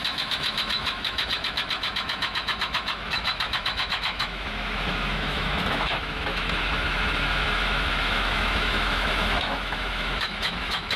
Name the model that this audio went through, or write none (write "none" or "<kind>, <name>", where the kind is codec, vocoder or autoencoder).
autoencoder, DAC-VAE